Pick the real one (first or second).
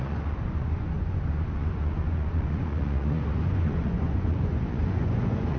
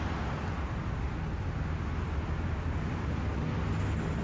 second